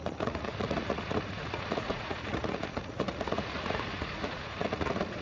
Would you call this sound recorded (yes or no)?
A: no